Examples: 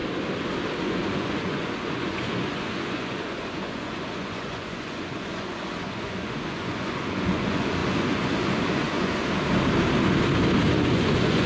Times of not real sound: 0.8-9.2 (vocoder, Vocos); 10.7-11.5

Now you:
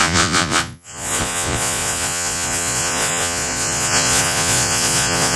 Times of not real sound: 0.0-5.4 (vocoder, Vocos)

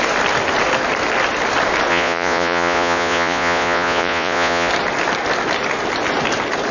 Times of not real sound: 1.9-4.7 (vocoder, Vocos)